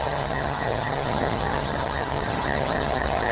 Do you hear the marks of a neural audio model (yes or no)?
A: yes